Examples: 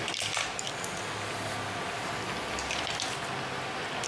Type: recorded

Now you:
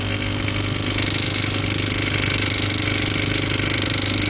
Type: recorded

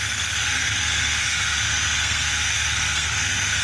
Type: remade